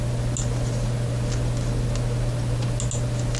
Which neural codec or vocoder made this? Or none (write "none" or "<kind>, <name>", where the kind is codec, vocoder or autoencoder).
none